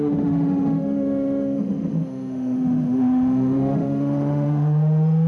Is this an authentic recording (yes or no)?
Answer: no